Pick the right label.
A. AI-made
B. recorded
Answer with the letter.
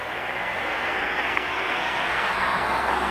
A